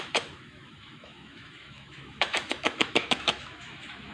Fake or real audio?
fake